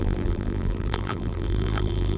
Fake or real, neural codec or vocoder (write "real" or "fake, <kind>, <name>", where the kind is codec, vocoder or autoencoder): fake, vocoder, BigVGAN v2